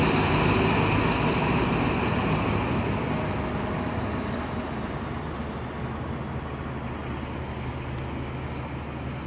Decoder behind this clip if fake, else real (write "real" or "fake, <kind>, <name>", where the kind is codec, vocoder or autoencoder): real